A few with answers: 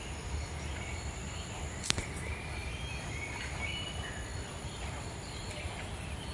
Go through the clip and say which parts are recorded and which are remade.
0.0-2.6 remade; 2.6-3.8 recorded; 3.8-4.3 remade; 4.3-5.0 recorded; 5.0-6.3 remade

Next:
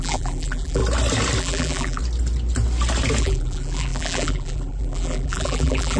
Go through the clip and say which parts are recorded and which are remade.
0.0-0.8 remade; 0.8-1.4 recorded; 1.4-2.0 remade; 2.0-3.2 recorded; 3.2-6.0 remade